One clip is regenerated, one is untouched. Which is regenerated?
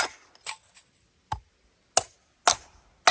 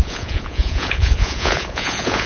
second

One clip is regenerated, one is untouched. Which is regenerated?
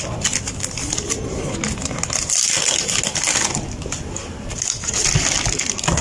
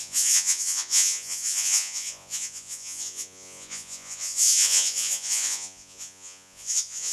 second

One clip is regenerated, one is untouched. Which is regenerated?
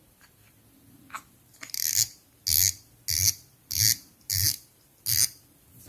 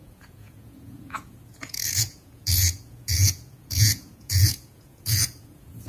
second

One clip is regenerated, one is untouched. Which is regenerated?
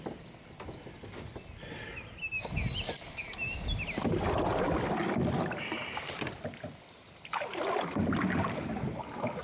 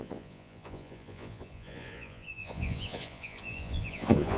second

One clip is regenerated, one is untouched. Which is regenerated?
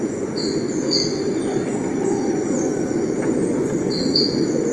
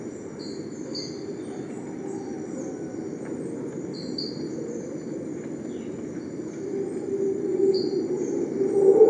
first